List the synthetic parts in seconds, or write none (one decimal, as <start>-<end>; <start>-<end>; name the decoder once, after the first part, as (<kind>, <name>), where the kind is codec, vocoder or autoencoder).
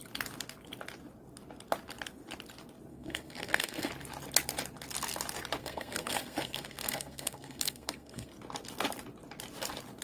2.9-3.9 (codec, SNAC); 5.6-8.3